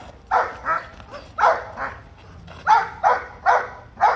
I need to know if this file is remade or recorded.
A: recorded